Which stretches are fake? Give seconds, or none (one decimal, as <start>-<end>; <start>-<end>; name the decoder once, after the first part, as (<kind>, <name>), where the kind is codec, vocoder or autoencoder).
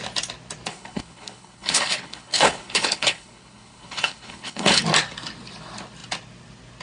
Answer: 0.7-4.8 (codec, HILCodec)